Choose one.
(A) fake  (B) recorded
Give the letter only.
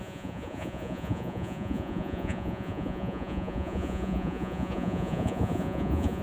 A